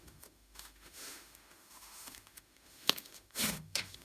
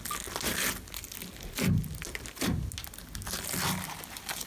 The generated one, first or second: first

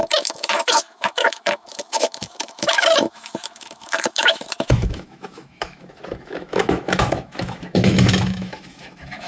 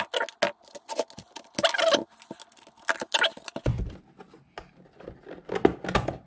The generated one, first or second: first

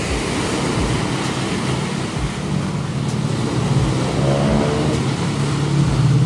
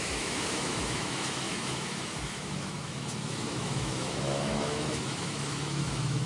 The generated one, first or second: second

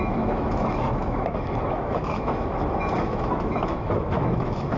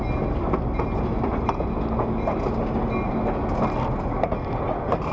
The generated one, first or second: first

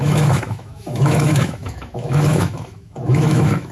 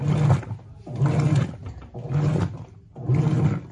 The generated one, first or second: first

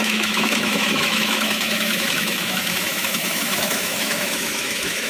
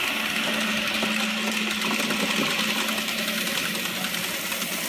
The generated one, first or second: first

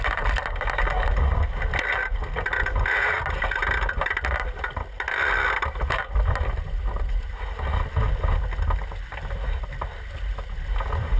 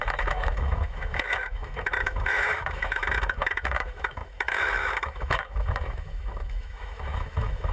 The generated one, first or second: second